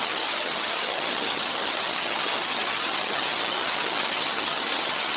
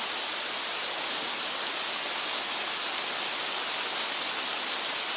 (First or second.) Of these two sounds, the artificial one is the first